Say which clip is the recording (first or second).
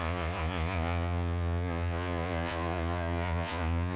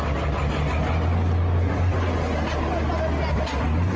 second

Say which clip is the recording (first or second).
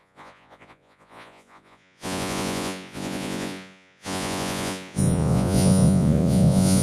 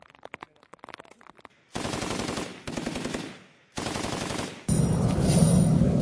second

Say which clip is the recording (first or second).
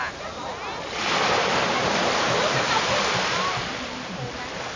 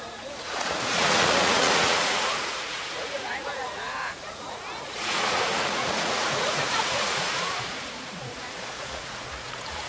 first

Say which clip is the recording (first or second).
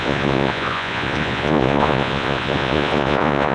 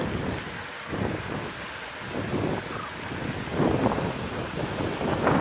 second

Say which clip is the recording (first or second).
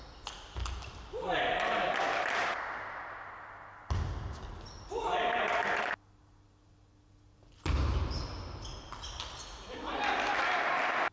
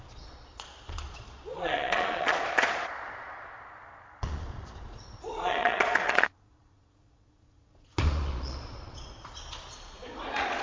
first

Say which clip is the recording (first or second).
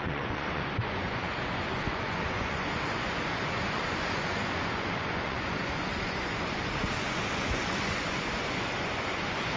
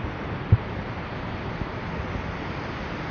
second